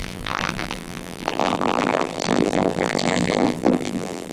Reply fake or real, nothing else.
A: fake